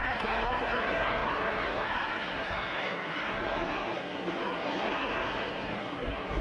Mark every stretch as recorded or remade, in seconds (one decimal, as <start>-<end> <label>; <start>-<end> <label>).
0.0-6.4 remade